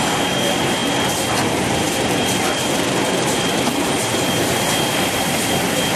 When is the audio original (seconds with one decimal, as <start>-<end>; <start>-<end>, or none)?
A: 0.0-6.0